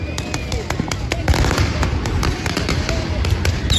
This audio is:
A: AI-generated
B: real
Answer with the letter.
B